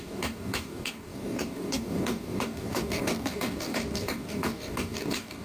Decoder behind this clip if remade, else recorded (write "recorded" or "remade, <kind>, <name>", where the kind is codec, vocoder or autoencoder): remade, codec, DAC